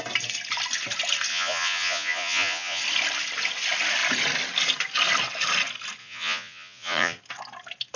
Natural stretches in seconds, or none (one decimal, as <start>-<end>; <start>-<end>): 0.0-1.3; 2.8-6.0; 7.2-8.0